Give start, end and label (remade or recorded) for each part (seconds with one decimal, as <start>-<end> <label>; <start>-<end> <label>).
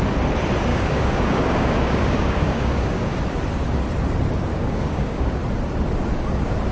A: 0.0-0.7 recorded; 0.7-3.2 remade; 3.2-4.5 recorded; 4.5-5.4 remade; 5.4-6.7 recorded